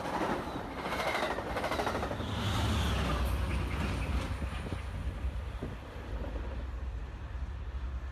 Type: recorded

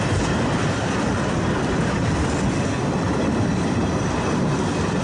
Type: remade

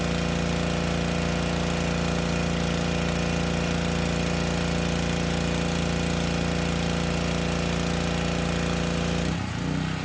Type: recorded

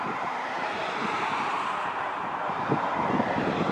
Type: remade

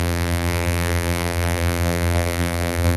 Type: remade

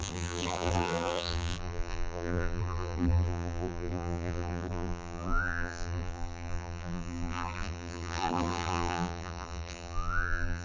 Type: remade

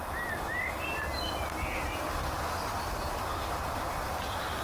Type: recorded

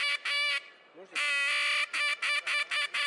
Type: recorded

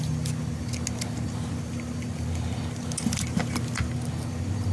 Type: recorded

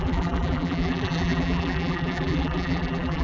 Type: remade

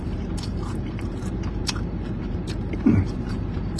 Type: remade